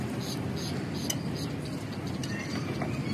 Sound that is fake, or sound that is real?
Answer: real